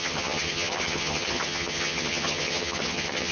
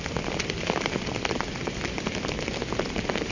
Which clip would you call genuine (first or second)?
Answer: second